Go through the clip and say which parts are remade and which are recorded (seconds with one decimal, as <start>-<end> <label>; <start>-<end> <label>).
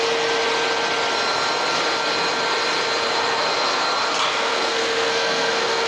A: 0.0-4.3 recorded; 4.3-5.9 remade